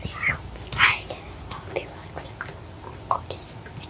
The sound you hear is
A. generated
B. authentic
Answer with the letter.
B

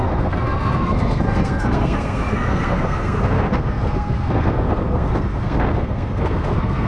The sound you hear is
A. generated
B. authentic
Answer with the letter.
A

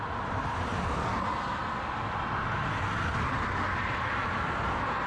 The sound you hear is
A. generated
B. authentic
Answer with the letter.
B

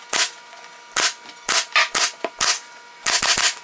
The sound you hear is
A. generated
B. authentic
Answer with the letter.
B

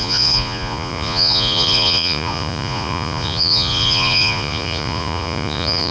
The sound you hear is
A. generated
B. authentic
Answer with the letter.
A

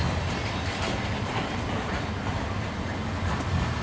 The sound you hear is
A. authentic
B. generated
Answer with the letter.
A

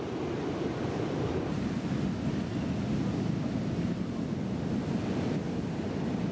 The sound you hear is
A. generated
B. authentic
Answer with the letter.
B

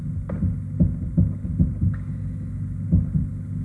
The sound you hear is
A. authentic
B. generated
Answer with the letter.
A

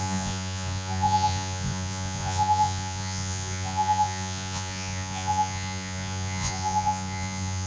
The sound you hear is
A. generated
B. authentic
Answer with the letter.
A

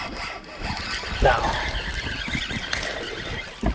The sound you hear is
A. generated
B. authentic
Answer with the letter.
B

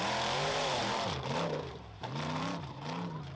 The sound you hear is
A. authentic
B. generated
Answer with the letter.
B